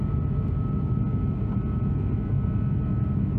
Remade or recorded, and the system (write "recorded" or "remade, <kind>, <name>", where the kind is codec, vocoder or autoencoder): recorded